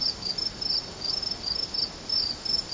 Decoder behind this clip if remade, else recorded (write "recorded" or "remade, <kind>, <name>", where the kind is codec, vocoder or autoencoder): recorded